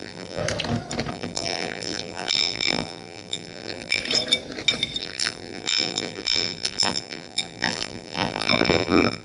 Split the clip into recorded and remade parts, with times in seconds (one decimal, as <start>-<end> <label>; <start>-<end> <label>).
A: 0.0-0.4 remade; 0.4-1.1 recorded; 1.1-4.0 remade; 4.0-5.0 recorded; 5.0-9.2 remade